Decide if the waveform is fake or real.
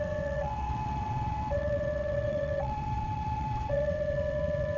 fake